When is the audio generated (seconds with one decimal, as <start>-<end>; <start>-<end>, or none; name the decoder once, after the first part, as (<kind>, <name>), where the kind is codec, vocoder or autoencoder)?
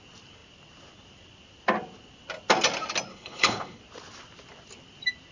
3.1-3.8 (codec, HILCodec)